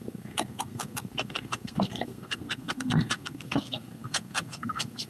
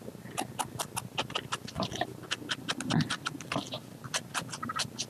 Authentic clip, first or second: second